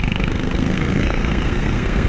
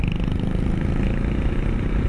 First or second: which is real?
second